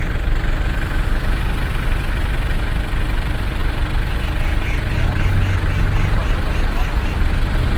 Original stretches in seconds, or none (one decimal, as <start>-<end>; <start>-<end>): 0.0-7.8